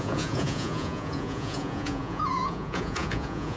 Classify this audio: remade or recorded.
remade